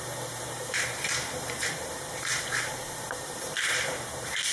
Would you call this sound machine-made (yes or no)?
yes